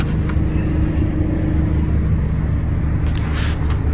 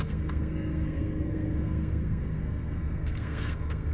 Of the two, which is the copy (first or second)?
second